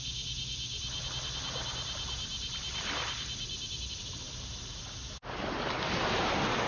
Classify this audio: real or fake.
real